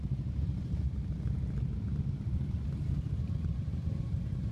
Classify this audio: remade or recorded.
remade